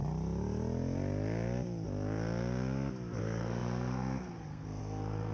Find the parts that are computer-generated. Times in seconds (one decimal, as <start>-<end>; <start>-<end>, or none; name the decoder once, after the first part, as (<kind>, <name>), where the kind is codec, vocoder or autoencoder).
3.2-5.3 (codec, SNAC)

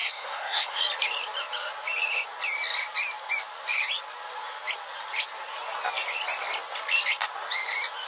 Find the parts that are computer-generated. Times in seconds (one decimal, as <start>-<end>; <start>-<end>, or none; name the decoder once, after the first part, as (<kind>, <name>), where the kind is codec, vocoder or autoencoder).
0.0-0.8 (codec, SNAC)

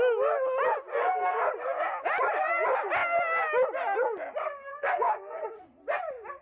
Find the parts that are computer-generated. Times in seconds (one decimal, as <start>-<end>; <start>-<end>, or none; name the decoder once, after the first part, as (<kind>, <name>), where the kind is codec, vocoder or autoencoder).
0.9-1.5 (codec, SNAC); 4.7-5.8

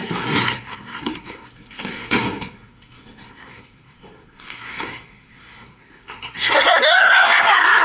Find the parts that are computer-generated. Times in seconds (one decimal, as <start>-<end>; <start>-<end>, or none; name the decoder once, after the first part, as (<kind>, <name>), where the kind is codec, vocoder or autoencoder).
0.0-7.8 (codec, SNAC)

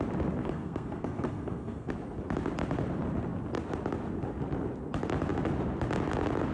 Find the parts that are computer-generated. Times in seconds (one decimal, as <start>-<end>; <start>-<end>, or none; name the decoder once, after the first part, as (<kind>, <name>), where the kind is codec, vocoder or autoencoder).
0.4-1.9 (codec, SNAC)

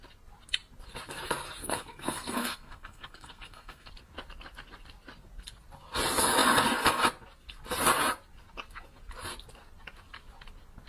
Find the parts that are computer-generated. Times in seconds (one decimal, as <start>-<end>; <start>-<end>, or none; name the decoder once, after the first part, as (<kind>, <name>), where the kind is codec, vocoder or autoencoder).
1.6-3.9 (codec, SNAC)